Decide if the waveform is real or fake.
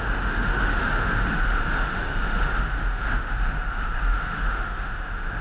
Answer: fake